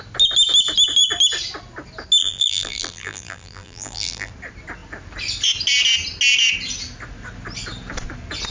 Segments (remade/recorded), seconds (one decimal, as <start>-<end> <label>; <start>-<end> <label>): 0.0-2.2 recorded; 2.2-4.3 remade; 4.3-8.5 recorded

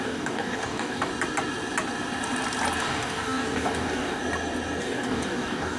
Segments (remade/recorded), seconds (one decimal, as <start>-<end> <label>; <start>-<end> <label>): 0.0-1.1 remade; 1.1-2.8 recorded; 2.8-4.2 remade; 4.2-4.8 recorded; 4.8-5.8 remade

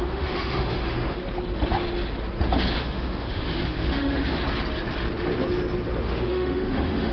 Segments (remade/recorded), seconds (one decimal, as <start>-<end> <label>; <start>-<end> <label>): 0.0-1.2 remade; 1.2-2.8 recorded; 2.8-4.4 remade; 4.4-6.0 recorded; 6.0-7.1 remade

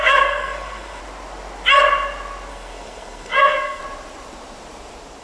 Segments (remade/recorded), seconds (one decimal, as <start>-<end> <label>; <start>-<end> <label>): 0.0-1.0 remade; 1.0-2.5 recorded; 2.5-3.8 remade; 3.8-5.2 recorded

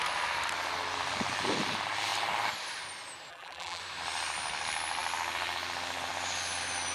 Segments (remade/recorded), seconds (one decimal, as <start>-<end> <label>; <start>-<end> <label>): 0.0-3.3 recorded; 3.3-3.8 remade; 3.8-6.9 recorded